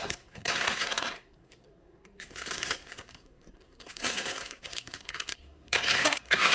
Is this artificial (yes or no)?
yes